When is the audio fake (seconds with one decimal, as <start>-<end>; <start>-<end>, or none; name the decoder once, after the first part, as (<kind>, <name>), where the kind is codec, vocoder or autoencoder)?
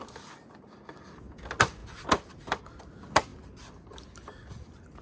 0.0-5.0 (vocoder, BigVGAN v2)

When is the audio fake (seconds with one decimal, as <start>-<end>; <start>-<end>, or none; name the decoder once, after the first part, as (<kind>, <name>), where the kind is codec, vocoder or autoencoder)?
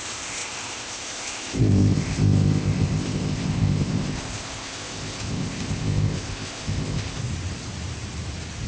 0.0-7.2 (codec, ZipCodec)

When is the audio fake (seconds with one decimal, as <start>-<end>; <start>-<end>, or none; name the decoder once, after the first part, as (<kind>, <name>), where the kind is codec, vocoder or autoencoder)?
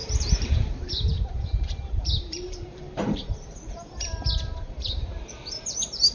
0.0-6.1 (vocoder, BigVGAN v2)